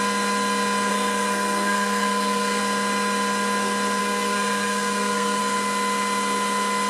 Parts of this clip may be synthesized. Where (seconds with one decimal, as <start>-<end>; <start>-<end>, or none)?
0.9-2.6; 4.0-5.4